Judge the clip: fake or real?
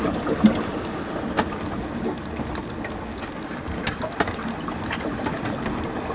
real